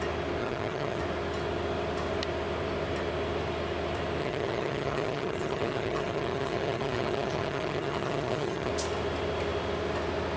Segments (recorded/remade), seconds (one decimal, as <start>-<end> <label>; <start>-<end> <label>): 0.0-0.4 recorded; 0.4-1.0 remade; 1.0-4.2 recorded; 4.2-8.7 remade; 8.7-10.4 recorded